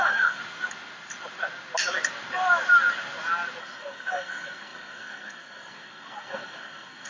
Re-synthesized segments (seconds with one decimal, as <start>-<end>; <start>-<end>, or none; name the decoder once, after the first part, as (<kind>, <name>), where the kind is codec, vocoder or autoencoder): 0.0-0.4 (codec, SNAC); 3.6-7.1